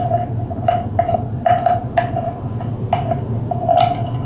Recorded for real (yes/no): yes